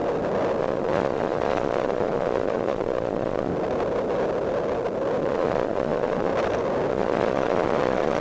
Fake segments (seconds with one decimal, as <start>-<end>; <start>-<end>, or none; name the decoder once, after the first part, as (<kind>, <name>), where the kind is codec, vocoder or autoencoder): 0.6-3.5 (vocoder, Vocos); 5.2-6.3; 6.9-8.2